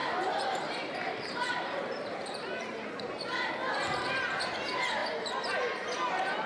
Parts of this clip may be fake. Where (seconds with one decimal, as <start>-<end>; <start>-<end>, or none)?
0.0-3.1